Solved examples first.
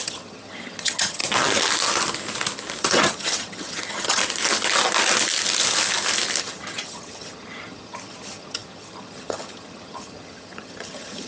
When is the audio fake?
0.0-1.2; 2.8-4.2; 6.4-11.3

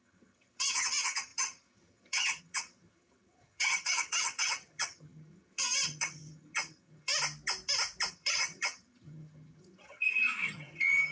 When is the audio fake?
0.0-7.1; 8.1-11.1

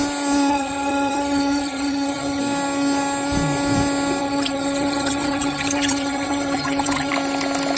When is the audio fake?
0.5-2.4; 4.2-7.1

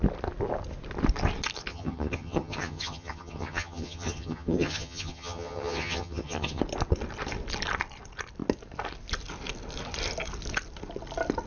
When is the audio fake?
1.7-6.6

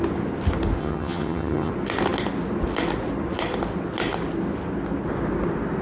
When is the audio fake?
0.8-1.7